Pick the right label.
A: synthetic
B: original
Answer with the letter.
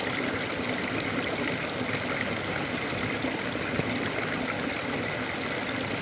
B